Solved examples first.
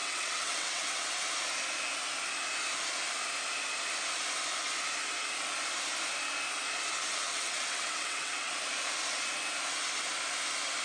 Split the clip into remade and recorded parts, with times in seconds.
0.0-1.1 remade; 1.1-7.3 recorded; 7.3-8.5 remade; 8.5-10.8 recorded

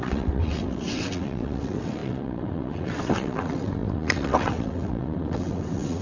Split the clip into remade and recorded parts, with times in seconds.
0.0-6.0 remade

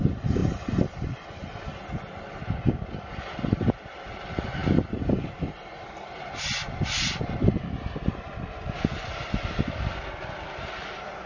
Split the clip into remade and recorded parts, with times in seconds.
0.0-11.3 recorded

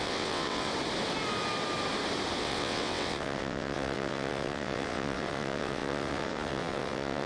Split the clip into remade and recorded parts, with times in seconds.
0.0-0.7 remade; 0.7-2.4 recorded; 2.4-7.3 remade